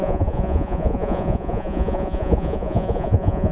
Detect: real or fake fake